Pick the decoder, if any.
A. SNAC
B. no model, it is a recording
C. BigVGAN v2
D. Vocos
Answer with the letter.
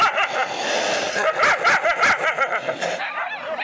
B